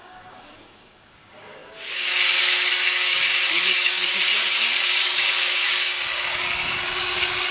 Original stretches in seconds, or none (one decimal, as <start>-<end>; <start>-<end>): none

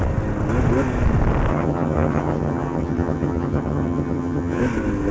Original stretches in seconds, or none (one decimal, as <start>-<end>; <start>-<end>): 0.0-1.5; 4.6-5.1